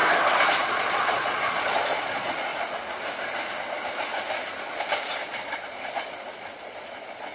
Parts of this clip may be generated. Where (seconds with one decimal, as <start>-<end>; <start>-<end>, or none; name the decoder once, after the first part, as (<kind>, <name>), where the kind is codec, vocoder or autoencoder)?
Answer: 0.6-2.5 (vocoder, Vocos); 4.8-7.3